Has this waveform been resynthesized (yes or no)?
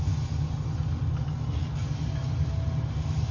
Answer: no